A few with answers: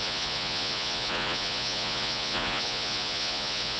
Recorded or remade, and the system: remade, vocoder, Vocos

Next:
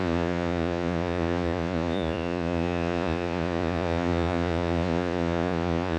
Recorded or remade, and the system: remade, vocoder, Vocos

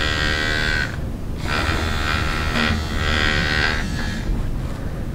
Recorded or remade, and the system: recorded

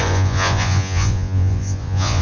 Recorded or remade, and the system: remade, vocoder, Vocos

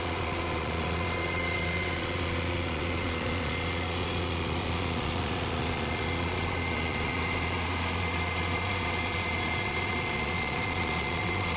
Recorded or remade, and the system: remade, vocoder, Vocos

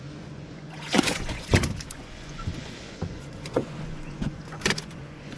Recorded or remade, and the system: remade, vocoder, Vocos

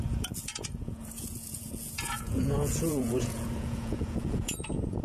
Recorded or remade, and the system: remade, vocoder, Vocos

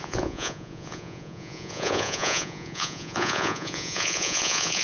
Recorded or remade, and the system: remade, vocoder, Vocos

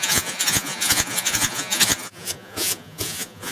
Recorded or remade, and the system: remade, vocoder, Vocos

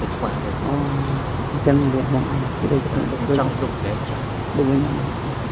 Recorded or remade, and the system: recorded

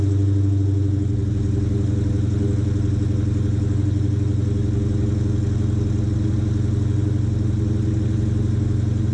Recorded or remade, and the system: recorded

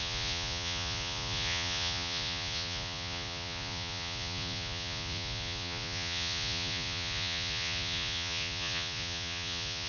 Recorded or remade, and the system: remade, vocoder, Vocos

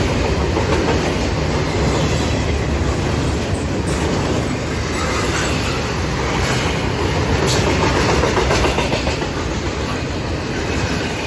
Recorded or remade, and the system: recorded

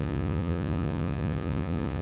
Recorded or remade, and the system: remade, vocoder, Vocos